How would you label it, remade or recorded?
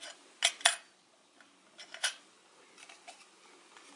recorded